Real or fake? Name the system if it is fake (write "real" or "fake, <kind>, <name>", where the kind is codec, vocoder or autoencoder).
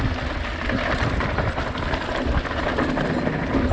real